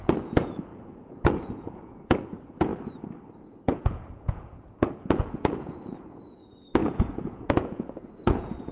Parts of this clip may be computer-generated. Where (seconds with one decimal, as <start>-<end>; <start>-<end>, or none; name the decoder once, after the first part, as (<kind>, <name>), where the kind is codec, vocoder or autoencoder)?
0.0-2.7 (vocoder, Vocos); 3.4-8.7